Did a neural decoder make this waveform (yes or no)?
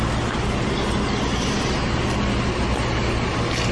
no